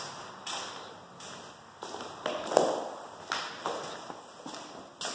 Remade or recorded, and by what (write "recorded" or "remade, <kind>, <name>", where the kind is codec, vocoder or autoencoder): recorded